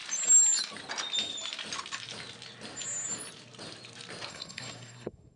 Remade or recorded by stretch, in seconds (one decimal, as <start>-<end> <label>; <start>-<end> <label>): 0.0-4.3 recorded; 4.3-5.4 remade